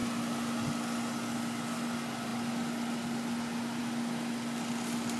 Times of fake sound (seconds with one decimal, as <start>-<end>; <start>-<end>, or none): none

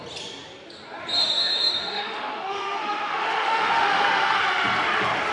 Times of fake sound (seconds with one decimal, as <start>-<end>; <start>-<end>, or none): 1.2-4.4

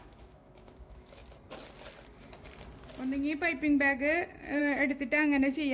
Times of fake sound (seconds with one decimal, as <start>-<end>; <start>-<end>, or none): 0.0-1.2; 4.6-5.7

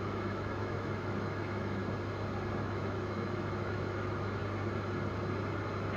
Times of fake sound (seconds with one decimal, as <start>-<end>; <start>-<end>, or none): 0.0-1.8; 2.6-4.4

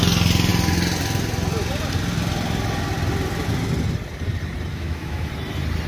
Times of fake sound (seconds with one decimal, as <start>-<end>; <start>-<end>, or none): 4.7-5.3